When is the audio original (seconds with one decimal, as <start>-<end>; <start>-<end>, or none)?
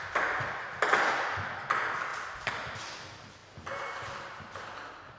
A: 0.0-2.1; 2.8-5.2